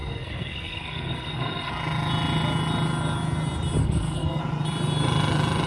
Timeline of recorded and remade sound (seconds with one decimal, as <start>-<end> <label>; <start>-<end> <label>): 0.0-1.7 remade; 1.7-3.8 recorded; 3.8-4.4 remade; 4.4-5.7 recorded